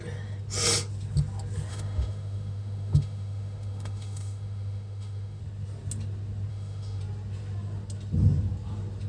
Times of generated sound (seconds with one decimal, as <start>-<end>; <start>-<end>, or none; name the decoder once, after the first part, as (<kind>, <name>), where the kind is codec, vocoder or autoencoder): 1.7-5.4 (autoencoder, DAC-VAE); 6.5-7.0